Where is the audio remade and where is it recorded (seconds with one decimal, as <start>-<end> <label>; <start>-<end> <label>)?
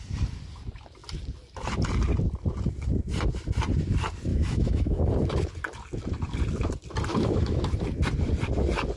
0.0-4.3 recorded; 4.3-5.1 remade; 5.1-7.1 recorded; 7.1-7.6 remade; 7.6-9.0 recorded